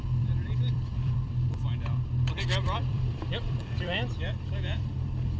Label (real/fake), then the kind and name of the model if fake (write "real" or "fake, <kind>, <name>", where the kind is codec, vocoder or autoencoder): fake, vocoder, BigVGAN v2